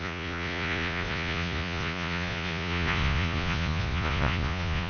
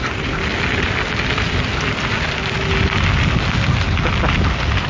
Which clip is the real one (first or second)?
second